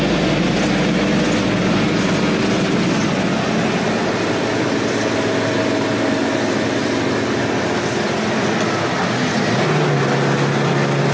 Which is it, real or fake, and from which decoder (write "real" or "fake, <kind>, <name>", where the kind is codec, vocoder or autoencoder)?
real